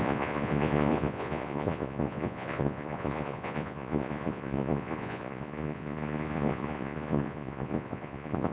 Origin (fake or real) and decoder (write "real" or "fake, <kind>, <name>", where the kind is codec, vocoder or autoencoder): fake, vocoder, Vocos